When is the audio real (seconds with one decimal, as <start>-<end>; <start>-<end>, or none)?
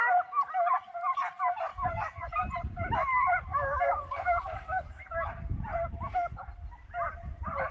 0.0-1.7; 2.3-3.5; 5.0-7.7